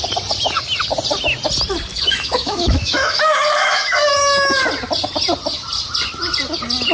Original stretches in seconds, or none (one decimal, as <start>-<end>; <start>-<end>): 0.0-1.9; 4.6-6.9